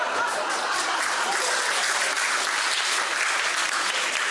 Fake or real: real